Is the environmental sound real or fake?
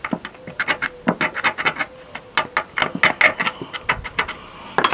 real